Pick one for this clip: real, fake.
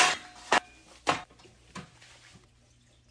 real